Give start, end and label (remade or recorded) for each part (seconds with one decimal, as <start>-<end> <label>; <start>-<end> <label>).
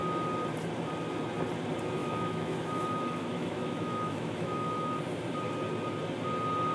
0.0-2.0 recorded; 2.0-5.0 remade; 5.0-6.7 recorded